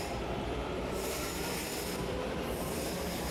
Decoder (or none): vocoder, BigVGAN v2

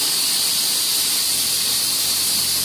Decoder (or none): none